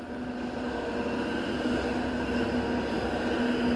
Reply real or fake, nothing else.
real